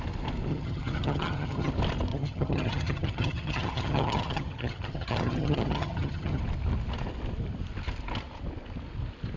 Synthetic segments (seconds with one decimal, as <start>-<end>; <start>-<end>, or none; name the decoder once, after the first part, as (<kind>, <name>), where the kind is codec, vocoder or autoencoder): 0.5-1.7 (vocoder, HiFi-GAN); 2.1-6.4

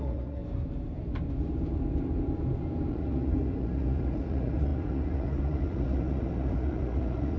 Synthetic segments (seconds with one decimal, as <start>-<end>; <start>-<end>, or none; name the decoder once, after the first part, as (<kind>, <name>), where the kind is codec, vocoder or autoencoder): 0.0-0.4 (vocoder, Vocos); 2.9-7.4

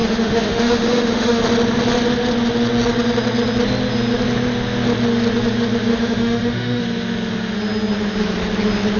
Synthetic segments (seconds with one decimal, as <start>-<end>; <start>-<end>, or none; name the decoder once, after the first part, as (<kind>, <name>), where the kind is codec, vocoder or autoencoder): 0.0-1.4 (autoencoder, DAC-VAE); 5.9-6.8

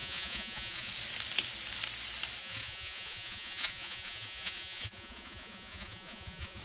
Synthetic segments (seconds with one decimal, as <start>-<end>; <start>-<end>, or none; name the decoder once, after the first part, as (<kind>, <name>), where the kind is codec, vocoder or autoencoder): 0.0-0.9 (vocoder, Vocos); 2.4-6.6

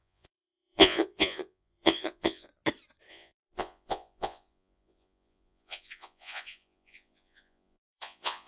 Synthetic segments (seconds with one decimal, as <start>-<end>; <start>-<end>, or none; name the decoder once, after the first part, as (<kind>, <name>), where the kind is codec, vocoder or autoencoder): 0.0-2.5 (vocoder, Vocos); 3.1-8.5

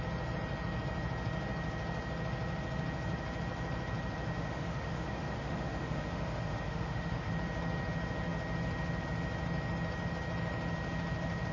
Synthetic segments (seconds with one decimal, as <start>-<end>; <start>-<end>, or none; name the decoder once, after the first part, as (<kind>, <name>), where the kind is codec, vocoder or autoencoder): 4.3-7.3 (autoencoder, DAC-VAE)

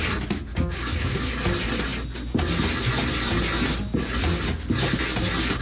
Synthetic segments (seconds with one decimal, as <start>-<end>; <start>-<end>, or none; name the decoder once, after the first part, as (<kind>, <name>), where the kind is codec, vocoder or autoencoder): 0.5-1.3 (codec, DAC)